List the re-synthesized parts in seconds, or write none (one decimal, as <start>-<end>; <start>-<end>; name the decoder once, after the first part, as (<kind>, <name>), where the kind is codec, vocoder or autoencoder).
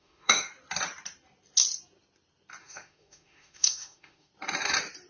0.0-0.5 (autoencoder, DAC-VAE); 2.6-4.3